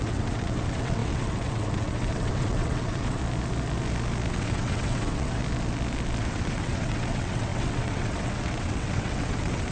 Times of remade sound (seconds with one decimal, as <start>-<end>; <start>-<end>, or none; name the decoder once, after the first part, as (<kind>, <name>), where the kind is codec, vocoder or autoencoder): 0.0-3.2 (vocoder, WaveNeXt); 4.3-5.4; 6.2-9.7